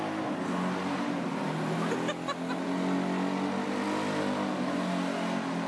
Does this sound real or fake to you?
real